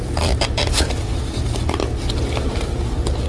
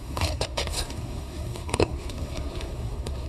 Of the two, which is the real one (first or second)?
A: first